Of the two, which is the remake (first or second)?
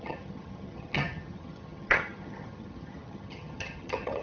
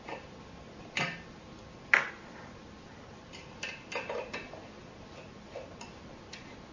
first